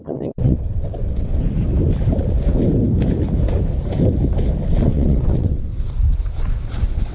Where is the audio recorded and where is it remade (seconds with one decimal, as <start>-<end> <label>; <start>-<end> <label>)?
0.0-1.3 remade; 1.3-4.7 recorded; 4.7-5.7 remade; 5.7-7.1 recorded